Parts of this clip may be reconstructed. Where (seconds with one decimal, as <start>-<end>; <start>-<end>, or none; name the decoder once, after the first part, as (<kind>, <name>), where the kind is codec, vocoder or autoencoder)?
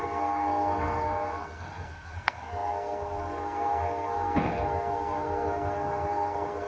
0.0-6.7 (codec, SNAC)